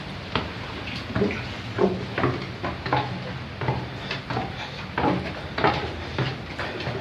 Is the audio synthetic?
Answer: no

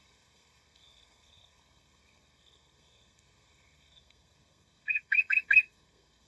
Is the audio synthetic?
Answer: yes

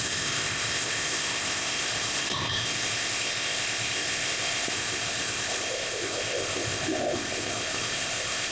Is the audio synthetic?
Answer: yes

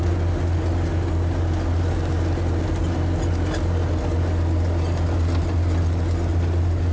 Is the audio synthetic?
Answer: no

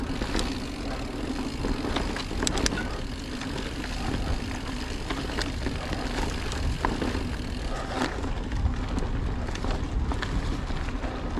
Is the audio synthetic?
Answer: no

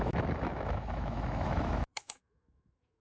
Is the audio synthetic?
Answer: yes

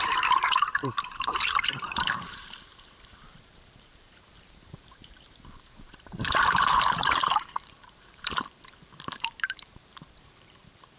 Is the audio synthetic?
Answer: yes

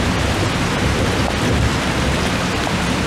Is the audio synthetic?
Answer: no